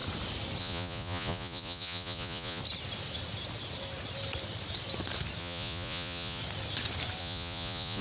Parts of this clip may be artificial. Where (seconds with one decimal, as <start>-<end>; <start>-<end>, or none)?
0.6-2.6; 5.4-6.4; 7.2-8.0